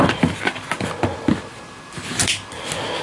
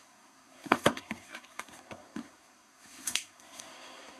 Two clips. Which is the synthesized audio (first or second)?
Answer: second